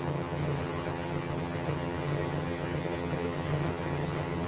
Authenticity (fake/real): fake